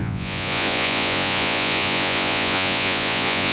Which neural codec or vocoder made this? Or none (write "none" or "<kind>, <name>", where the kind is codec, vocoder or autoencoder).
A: vocoder, Vocos